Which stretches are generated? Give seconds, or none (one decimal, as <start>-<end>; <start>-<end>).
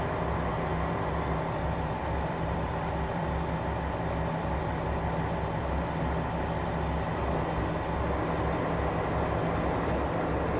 0.5-3.3